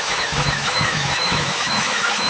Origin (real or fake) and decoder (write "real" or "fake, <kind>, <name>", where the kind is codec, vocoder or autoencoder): fake, autoencoder, DAC-VAE